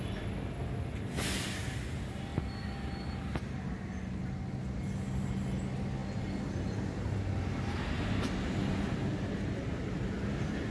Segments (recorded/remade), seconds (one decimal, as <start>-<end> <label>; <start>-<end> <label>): 0.0-10.7 recorded